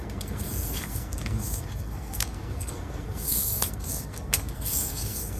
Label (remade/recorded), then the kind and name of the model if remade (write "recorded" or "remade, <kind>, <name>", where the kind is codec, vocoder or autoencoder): remade, codec, SNAC